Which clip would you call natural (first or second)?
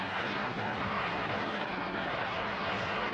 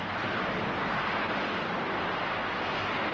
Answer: second